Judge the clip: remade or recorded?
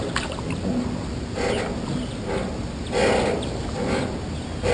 recorded